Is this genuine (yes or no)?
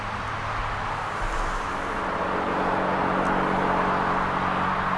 yes